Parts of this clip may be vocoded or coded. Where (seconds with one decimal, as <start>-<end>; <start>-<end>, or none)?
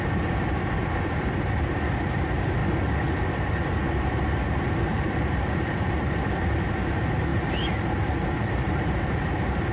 0.0-2.6; 3.3-9.7